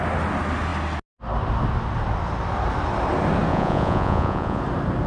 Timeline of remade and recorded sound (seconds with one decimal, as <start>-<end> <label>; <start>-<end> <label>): 0.0-3.5 recorded; 3.5-4.6 remade; 4.6-5.1 recorded

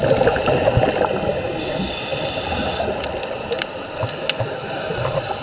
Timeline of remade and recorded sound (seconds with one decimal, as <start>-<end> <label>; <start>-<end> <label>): 0.0-5.4 recorded